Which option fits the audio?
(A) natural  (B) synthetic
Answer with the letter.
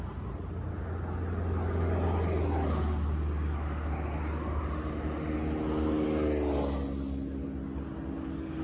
A